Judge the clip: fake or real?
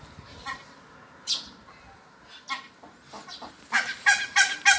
real